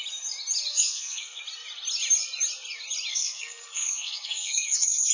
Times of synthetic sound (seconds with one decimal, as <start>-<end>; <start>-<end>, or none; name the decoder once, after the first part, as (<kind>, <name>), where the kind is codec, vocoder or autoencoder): 0.7-1.4 (codec, SNAC); 3.1-5.1